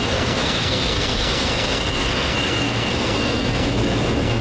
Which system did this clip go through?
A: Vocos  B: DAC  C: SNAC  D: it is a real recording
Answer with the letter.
C